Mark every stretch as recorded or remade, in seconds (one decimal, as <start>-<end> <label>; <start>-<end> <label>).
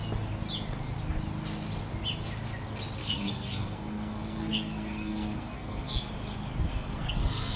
0.0-3.0 recorded; 3.0-6.1 remade; 6.1-6.7 recorded; 6.7-7.6 remade